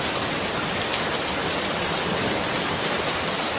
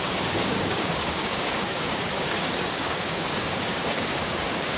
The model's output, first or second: second